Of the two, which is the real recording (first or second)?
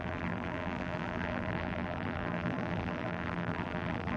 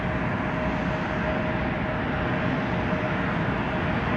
second